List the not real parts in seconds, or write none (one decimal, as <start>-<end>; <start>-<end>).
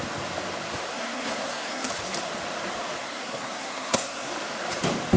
0.9-1.9; 3.0-4.3